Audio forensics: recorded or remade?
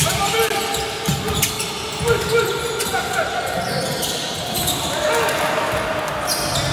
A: recorded